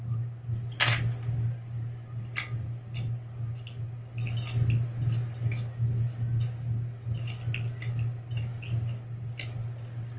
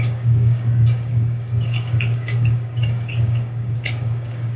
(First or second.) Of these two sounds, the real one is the first